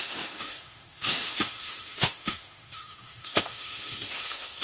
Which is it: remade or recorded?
remade